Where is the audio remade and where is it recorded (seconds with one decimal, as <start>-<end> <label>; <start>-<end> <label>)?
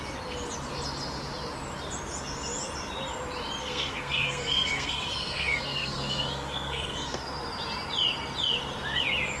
0.0-3.6 recorded; 3.6-7.2 remade; 7.2-9.4 recorded